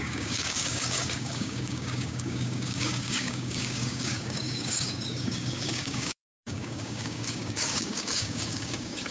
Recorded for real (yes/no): no